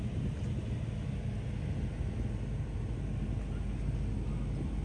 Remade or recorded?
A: recorded